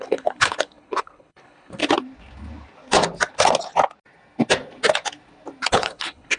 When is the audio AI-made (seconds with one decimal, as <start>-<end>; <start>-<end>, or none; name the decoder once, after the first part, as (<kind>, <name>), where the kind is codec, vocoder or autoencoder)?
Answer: 0.0-1.8 (codec, HILCodec); 5.6-6.4